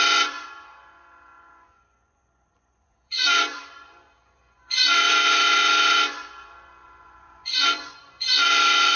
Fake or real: fake